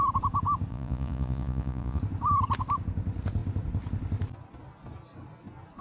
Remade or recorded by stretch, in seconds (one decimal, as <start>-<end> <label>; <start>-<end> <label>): 0.0-0.7 recorded; 0.7-2.0 remade; 2.0-5.8 recorded